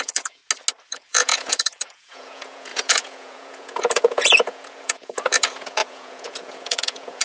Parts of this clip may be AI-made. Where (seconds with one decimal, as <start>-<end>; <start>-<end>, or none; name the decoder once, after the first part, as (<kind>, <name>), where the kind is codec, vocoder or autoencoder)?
0.0-0.4 (vocoder, Vocos); 0.9-7.2